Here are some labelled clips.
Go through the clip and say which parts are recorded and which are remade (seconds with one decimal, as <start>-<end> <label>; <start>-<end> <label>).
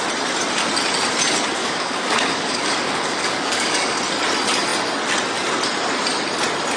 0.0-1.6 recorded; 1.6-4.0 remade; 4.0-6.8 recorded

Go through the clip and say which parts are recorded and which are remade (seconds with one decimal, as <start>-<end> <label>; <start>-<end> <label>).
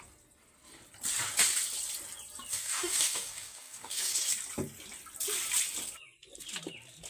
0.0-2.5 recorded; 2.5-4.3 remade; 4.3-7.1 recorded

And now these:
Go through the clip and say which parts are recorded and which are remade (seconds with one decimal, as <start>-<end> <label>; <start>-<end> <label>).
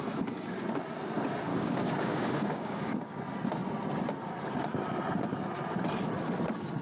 0.0-1.5 recorded; 1.5-3.1 remade; 3.1-6.8 recorded